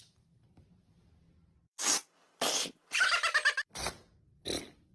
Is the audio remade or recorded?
remade